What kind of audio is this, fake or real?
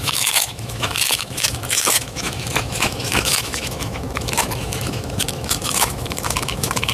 fake